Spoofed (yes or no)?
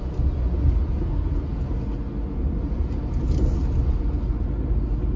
no